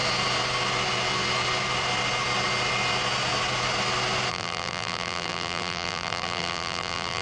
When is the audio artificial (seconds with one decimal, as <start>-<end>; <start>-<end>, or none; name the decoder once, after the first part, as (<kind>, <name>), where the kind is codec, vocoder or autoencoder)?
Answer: 4.3-7.2 (vocoder, BigVGAN v2)